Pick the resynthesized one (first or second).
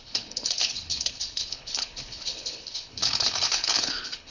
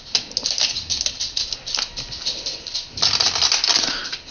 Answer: first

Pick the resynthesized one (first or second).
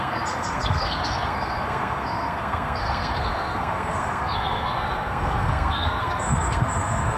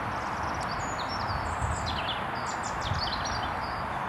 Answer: first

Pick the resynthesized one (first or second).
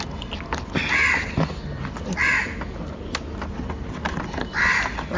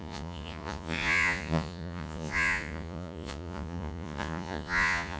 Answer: second